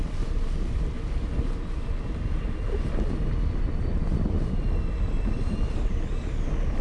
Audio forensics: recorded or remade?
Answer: recorded